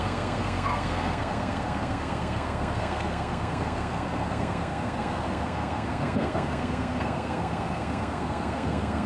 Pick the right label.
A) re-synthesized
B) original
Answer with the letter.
A